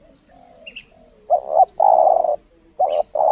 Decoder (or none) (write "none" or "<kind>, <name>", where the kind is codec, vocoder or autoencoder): none